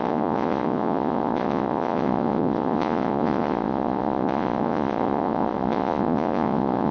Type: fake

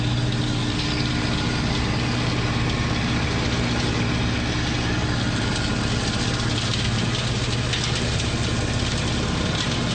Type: real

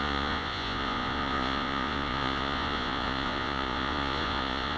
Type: fake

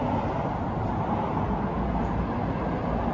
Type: real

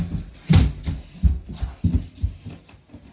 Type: real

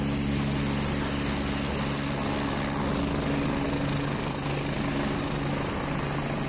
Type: real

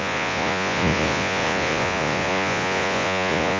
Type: fake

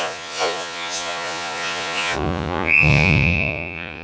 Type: fake